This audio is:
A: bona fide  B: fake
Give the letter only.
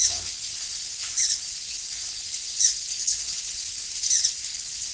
B